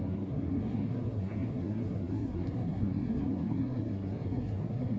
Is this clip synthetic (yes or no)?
yes